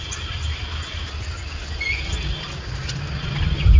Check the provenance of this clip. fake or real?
real